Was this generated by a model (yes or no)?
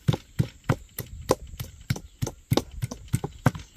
no